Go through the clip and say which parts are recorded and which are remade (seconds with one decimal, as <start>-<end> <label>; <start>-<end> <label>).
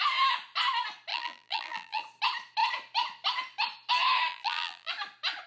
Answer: 0.0-1.1 recorded; 1.1-2.0 remade; 2.0-4.3 recorded; 4.3-4.9 remade; 4.9-5.5 recorded